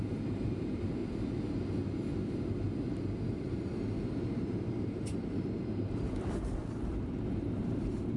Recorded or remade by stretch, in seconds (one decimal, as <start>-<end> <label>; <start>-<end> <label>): 0.0-1.0 remade; 1.0-4.5 recorded; 4.5-6.6 remade; 6.6-7.6 recorded; 7.6-8.2 remade